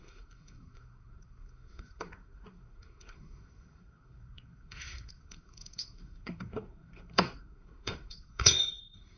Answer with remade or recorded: remade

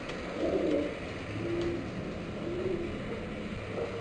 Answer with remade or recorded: recorded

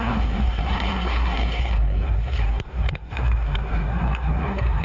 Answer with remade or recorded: remade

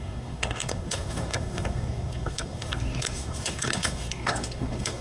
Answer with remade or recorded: remade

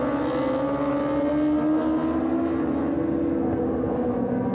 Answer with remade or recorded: recorded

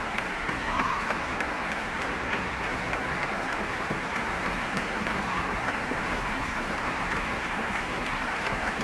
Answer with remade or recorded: remade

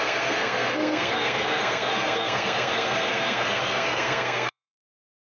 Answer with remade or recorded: remade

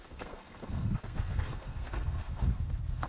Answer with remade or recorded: remade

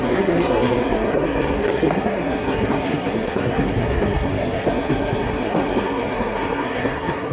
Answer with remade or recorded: remade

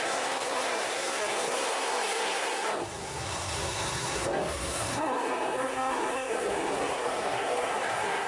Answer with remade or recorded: remade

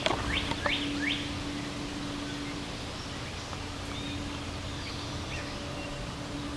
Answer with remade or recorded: recorded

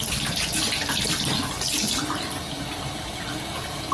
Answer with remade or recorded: recorded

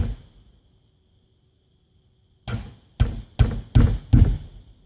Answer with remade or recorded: recorded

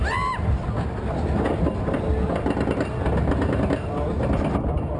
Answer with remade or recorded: recorded